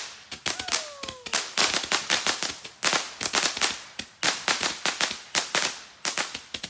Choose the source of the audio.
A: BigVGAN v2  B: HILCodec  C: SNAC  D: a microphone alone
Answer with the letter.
D